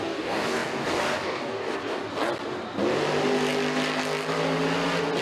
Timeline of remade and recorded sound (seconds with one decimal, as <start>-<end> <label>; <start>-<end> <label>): 0.0-2.0 remade; 2.0-5.2 recorded